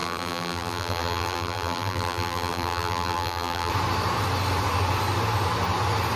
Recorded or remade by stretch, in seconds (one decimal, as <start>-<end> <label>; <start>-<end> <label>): 0.0-3.7 remade; 3.7-6.2 recorded